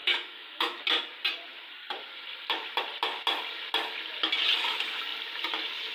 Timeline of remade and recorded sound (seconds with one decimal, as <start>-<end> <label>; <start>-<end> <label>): 0.0-0.8 remade; 0.8-5.9 recorded